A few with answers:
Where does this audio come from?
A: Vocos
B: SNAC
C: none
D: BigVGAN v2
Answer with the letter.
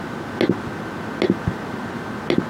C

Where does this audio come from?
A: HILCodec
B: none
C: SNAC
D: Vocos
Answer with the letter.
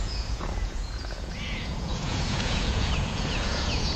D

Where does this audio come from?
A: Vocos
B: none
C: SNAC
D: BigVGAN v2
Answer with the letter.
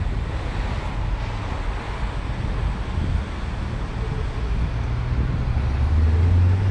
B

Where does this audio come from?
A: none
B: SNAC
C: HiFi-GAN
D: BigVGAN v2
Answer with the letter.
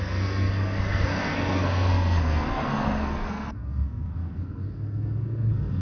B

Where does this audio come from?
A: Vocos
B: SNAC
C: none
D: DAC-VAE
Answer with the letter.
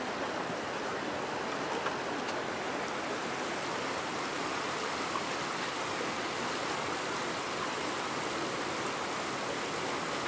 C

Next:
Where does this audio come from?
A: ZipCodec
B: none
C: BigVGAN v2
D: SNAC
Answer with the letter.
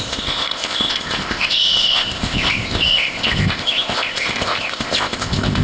A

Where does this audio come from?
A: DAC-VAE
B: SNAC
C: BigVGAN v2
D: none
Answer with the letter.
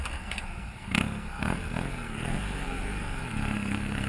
B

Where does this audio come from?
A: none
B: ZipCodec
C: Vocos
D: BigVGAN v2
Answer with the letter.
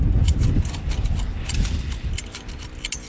A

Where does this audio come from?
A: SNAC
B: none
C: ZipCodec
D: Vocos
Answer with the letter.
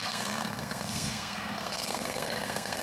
A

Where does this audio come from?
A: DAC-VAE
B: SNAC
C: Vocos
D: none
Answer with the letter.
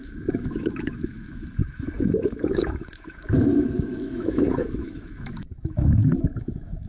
A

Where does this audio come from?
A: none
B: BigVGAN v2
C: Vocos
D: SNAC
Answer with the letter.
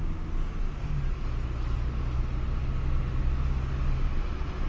A